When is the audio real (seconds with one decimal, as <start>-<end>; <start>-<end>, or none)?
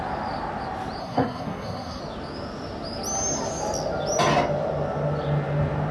0.0-1.0; 2.0-5.9